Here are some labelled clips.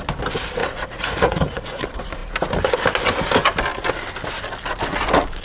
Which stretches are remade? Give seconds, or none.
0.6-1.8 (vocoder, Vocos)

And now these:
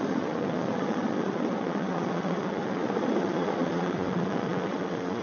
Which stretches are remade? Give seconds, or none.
0.0-5.2 (vocoder, Vocos)

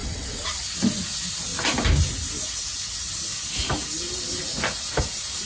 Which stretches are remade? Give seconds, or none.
0.0-0.7 (vocoder, WaveNeXt)

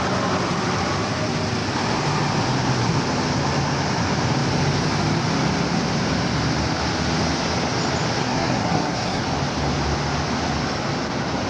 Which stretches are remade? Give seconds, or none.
8.2-9.2 (codec, SNAC)

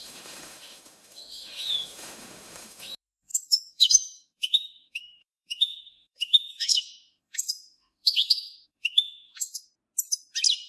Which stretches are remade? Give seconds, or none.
0.0-9.7 (autoencoder, DAC-VAE)

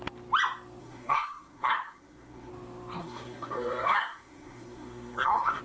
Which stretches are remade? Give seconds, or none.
0.8-2.5 (codec, SNAC); 3.0-5.6